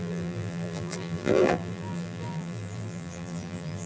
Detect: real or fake fake